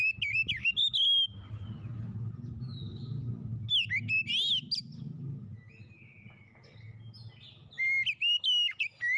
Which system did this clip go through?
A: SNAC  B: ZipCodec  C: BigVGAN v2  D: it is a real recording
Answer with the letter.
D